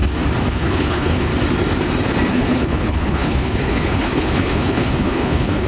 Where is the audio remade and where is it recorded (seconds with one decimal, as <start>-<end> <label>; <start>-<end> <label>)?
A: 0.0-0.5 recorded; 0.5-1.3 remade; 1.3-2.3 recorded; 2.3-5.7 remade